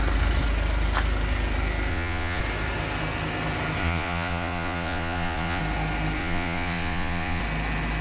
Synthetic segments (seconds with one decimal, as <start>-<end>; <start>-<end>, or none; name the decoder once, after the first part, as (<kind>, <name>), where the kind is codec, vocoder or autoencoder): 1.9-2.4 (vocoder, Vocos); 3.8-5.6; 6.2-7.4